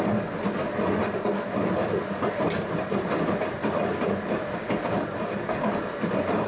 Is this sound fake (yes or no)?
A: no